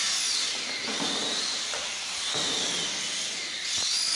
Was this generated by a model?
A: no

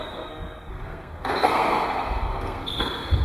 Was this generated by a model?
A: yes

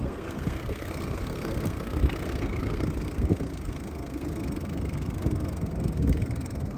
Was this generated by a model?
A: yes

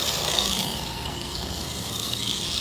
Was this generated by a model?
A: yes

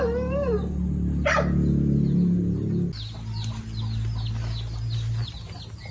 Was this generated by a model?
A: no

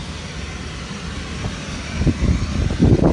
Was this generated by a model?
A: no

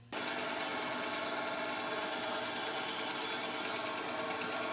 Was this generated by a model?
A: no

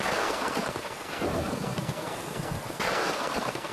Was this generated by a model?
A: yes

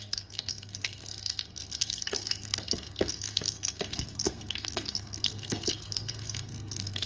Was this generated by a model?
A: yes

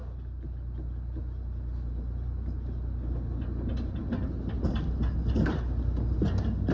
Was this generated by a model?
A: no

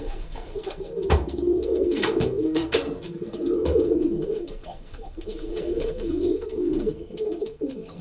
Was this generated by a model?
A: yes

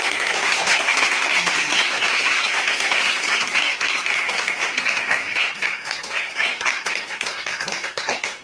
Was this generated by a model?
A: yes